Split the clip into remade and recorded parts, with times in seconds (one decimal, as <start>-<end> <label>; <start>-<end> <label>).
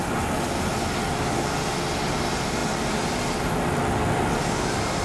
0.0-5.0 recorded